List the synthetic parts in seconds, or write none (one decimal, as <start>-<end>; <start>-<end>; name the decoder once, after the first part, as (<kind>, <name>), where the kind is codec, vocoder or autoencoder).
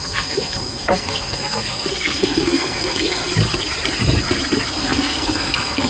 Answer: 0.0-3.2 (codec, SNAC); 4.8-5.9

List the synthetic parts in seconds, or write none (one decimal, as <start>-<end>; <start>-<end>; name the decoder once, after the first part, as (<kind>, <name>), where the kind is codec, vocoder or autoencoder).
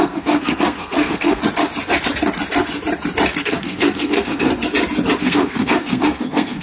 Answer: 0.0-1.4 (codec, SNAC); 3.4-4.5; 5.2-6.6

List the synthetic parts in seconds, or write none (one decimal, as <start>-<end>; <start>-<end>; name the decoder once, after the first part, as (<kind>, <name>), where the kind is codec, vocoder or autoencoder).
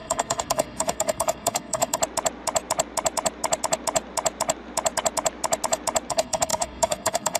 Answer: 0.0-2.0 (codec, SNAC); 6.1-7.4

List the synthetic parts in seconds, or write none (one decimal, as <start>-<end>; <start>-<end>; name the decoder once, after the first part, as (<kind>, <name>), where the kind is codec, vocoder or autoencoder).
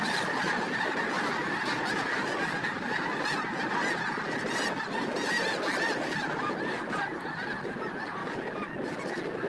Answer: none